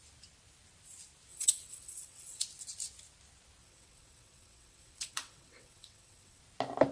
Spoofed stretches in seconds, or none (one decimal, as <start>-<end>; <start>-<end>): 1.3-2.4; 3.6-6.4